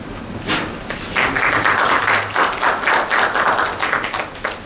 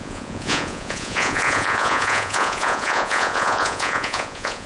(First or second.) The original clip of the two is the first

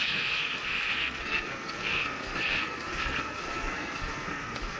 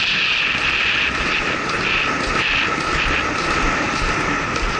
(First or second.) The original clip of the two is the second